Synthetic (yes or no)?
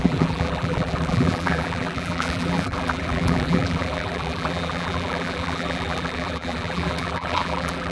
yes